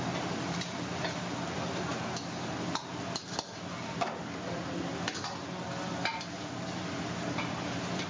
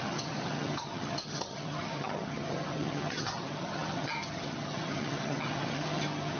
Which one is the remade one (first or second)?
second